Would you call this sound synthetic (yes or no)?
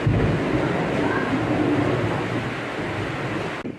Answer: no